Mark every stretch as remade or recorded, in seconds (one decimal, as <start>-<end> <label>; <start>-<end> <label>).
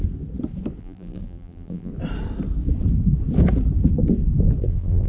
0.0-0.8 recorded; 0.8-1.9 remade; 1.9-4.6 recorded; 4.6-5.1 remade